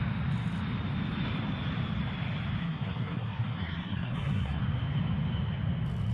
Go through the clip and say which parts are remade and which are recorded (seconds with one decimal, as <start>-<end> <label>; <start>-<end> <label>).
0.0-2.6 recorded; 2.6-4.6 remade; 4.6-6.1 recorded